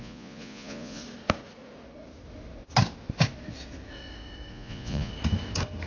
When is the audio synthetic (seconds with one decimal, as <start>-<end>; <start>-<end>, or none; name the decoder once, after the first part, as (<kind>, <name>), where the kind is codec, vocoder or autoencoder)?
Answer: 0.0-1.0 (vocoder, Vocos); 4.5-5.1